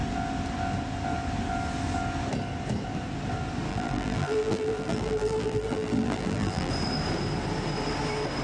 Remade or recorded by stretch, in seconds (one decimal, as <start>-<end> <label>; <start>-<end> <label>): 0.0-3.7 recorded; 3.7-6.7 remade; 6.7-8.4 recorded

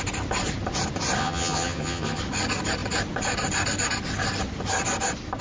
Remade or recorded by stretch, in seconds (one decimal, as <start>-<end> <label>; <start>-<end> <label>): 0.0-1.2 recorded; 1.2-2.2 remade; 2.2-5.4 recorded